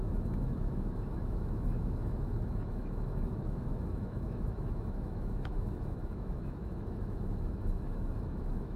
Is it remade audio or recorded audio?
remade